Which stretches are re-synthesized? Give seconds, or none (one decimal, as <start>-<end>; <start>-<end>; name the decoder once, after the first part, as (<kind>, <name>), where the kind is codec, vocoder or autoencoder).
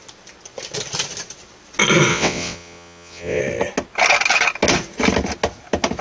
2.1-3.4 (vocoder, WaveNeXt)